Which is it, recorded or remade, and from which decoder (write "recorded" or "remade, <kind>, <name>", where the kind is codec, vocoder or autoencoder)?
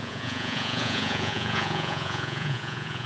remade, vocoder, Vocos